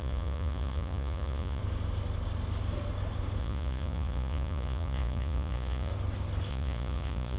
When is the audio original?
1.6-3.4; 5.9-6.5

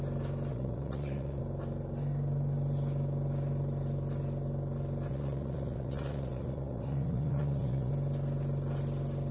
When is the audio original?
0.0-0.5; 1.4-5.1; 7.9-9.3

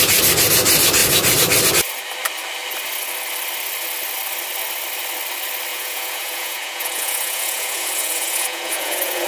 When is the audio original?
0.0-5.7

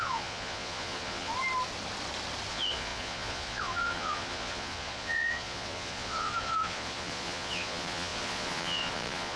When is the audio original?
1.3-2.5

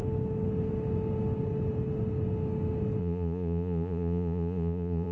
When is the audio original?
0.0-3.0